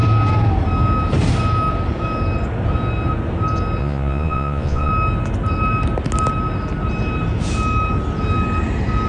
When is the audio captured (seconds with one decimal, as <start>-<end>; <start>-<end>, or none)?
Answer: 0.0-3.8; 4.9-9.1